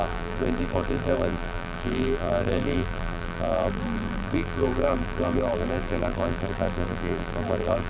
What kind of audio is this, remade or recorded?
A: remade